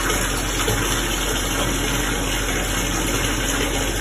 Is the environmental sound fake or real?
real